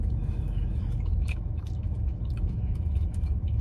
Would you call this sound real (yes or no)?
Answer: no